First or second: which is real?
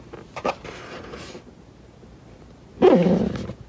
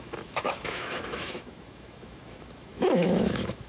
first